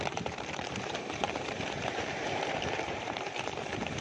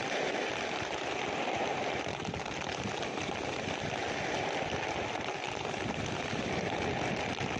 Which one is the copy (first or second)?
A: first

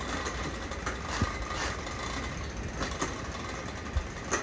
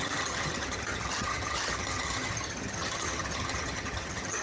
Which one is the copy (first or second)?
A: second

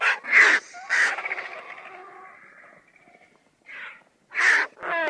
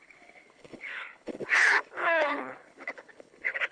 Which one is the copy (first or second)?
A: second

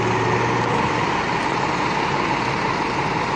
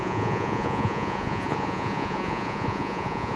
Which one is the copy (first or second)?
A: second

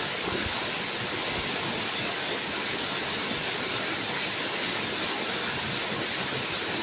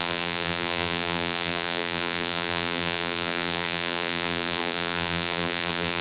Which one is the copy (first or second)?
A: second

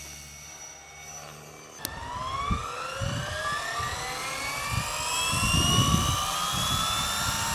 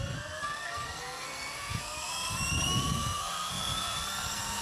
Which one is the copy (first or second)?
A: second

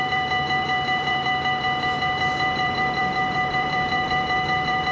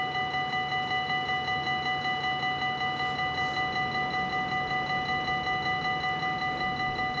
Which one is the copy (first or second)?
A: first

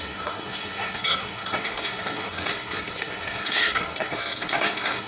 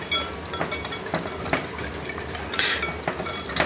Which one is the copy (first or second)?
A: first